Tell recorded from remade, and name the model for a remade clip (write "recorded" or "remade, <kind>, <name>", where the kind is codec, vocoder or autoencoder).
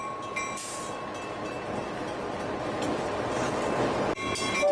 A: recorded